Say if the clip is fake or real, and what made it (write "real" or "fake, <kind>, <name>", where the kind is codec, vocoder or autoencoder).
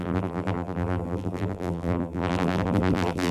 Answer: fake, vocoder, BigVGAN v2